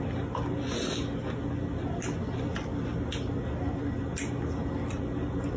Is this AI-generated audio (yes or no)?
no